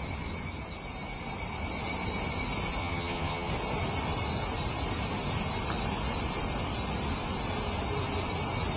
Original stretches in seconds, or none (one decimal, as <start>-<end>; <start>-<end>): 0.0-2.8; 3.5-8.8